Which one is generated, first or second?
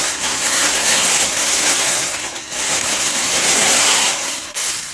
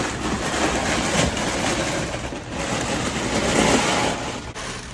first